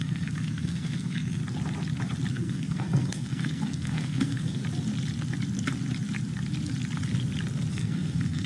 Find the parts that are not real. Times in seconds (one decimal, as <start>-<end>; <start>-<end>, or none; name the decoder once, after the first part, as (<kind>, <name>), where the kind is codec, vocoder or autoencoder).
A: 0.0-1.4 (codec, SNAC); 2.3-4.6; 7.7-8.5